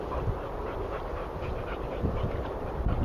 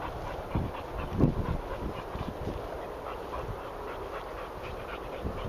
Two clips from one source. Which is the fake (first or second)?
first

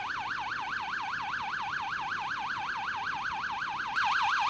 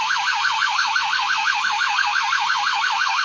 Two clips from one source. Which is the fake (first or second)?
second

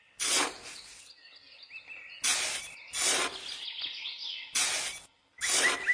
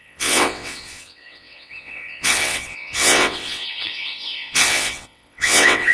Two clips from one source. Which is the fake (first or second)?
second